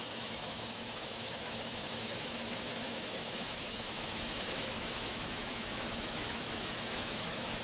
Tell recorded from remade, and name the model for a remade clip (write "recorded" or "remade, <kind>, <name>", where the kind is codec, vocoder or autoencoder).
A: remade, autoencoder, DAC-VAE